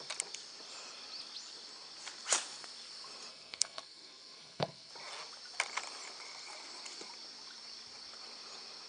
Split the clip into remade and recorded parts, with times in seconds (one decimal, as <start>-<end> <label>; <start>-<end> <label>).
0.0-3.3 recorded; 3.3-4.9 remade; 4.9-8.9 recorded